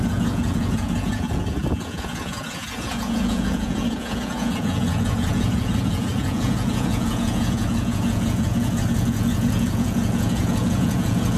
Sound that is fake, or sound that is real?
fake